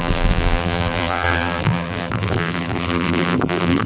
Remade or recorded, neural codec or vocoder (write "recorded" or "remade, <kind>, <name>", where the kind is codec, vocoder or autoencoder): remade, vocoder, BigVGAN v2